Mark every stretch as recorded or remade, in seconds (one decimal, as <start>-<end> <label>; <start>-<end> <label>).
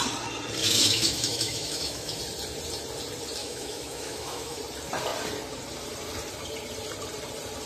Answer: 0.0-0.6 recorded; 0.6-2.2 remade; 2.2-3.4 recorded; 3.4-4.6 remade; 4.6-7.7 recorded